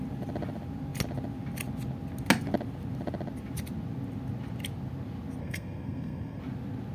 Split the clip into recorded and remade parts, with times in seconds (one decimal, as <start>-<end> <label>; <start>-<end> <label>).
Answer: 0.0-5.4 recorded; 5.4-6.4 remade; 6.4-6.9 recorded